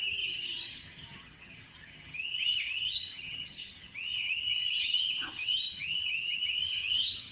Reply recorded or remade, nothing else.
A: remade